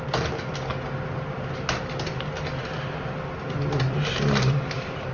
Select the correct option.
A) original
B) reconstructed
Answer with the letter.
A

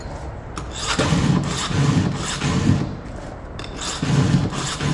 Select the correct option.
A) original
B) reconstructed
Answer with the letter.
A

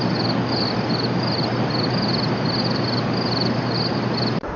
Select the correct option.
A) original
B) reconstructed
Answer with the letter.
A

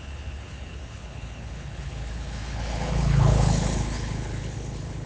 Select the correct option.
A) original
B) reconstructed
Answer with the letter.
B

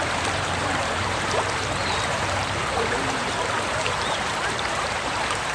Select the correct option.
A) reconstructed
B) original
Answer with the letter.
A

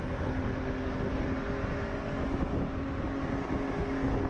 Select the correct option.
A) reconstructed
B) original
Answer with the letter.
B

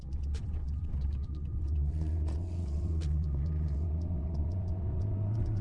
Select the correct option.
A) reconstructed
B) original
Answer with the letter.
A